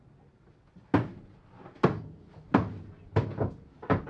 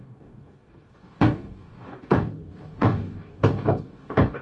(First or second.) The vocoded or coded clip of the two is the second